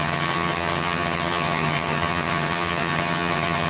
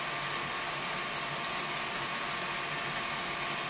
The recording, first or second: second